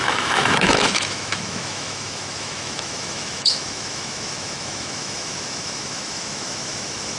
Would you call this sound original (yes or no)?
no